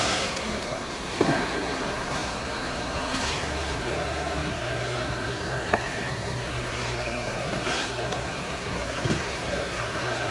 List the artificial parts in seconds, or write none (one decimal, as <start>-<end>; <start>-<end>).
0.0-10.3